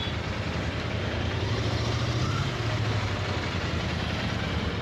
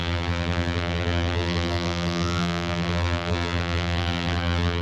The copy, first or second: second